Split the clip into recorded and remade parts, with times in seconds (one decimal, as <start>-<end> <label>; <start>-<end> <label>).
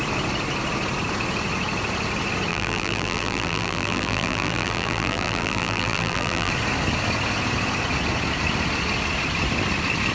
0.0-2.5 recorded; 2.5-6.5 remade; 6.5-10.1 recorded